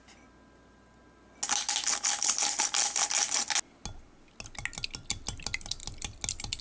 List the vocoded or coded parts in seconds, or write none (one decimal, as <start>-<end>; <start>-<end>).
none